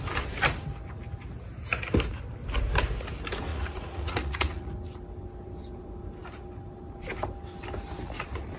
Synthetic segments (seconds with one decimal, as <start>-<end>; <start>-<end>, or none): 3.5-4.7